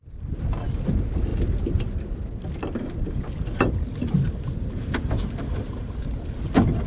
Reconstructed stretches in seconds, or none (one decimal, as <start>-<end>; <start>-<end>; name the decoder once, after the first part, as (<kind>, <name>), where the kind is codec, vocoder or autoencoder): none